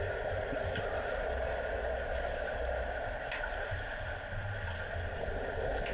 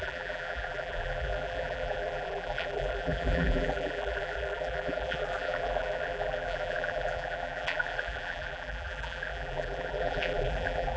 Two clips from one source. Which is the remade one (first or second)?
second